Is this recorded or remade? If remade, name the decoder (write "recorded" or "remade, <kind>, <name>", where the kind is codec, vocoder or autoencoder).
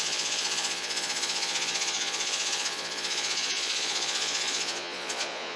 remade, vocoder, Vocos